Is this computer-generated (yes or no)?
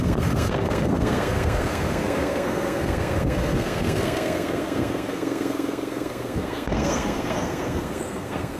yes